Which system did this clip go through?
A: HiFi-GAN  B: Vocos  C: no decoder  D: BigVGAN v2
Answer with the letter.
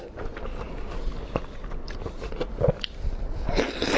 C